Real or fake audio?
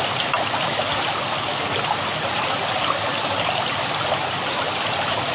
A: real